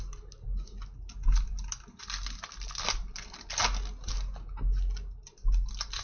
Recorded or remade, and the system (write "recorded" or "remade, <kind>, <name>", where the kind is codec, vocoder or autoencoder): recorded